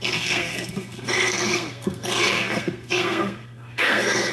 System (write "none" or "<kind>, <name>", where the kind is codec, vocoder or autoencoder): codec, SNAC